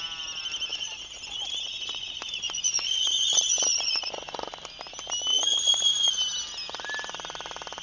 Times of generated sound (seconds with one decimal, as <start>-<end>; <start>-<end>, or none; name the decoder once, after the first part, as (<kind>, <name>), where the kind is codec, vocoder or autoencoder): 0.7-4.5 (vocoder, Vocos); 5.3-6.2